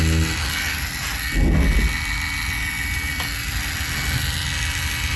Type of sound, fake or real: real